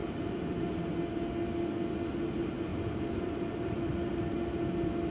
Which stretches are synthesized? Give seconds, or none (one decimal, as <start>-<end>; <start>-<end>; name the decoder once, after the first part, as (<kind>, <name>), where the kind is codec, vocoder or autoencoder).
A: 0.0-1.0 (vocoder, BigVGAN v2); 2.7-3.9